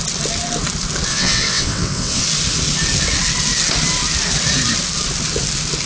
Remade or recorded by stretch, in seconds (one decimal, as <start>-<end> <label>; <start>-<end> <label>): 0.0-1.1 recorded; 1.1-2.2 remade; 2.2-5.9 recorded